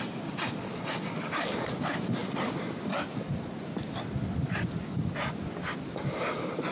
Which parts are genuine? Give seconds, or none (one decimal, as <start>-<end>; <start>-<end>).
0.0-6.7